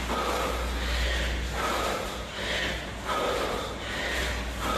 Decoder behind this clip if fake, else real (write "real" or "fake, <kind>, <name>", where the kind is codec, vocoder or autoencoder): real